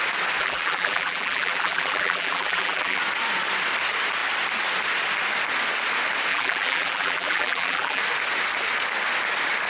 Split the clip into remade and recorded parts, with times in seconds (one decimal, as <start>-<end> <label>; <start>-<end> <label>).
0.0-0.4 recorded; 0.4-3.0 remade; 3.0-6.3 recorded; 6.3-8.0 remade; 8.0-9.7 recorded